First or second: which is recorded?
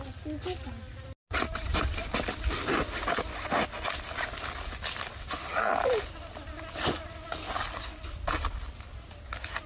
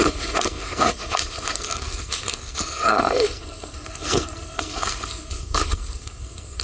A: first